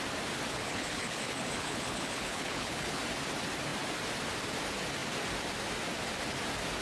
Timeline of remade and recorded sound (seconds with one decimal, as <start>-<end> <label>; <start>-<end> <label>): 0.0-0.5 recorded; 0.5-3.0 remade; 3.0-6.8 recorded